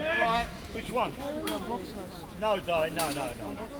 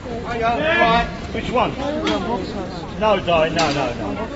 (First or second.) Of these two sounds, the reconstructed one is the first